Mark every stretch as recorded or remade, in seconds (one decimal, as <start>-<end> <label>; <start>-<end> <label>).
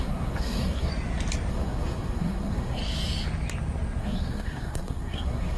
0.0-0.9 remade; 0.9-1.5 recorded; 1.5-2.8 remade; 2.8-4.0 recorded; 4.0-5.6 remade